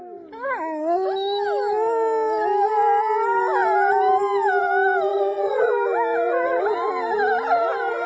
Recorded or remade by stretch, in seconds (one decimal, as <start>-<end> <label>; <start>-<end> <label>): 0.0-5.1 recorded; 5.1-5.7 remade; 5.7-8.1 recorded